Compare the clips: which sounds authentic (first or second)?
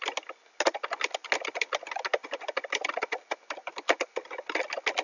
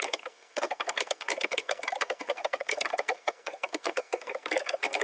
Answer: first